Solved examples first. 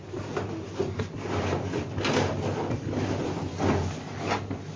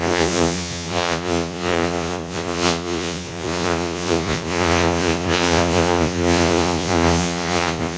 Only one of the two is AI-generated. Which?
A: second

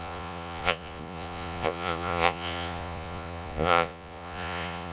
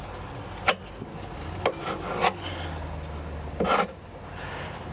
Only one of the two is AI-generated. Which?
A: first